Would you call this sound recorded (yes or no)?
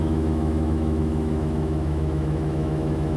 no